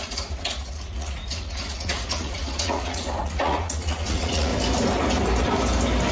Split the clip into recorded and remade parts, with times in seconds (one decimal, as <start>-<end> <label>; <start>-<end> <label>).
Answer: 0.0-4.5 remade; 4.5-6.1 recorded